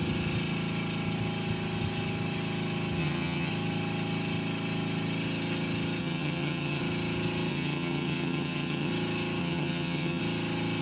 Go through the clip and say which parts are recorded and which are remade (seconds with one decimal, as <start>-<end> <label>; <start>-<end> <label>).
0.0-3.0 recorded; 3.0-3.5 remade; 3.5-6.0 recorded; 6.0-6.8 remade; 6.8-7.5 recorded; 7.5-8.9 remade; 8.9-9.4 recorded; 9.4-10.2 remade; 10.2-10.8 recorded